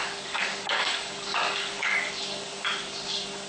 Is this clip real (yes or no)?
no